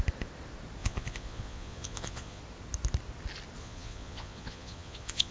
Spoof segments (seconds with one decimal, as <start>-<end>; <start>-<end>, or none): 0.8-2.4; 3.6-5.3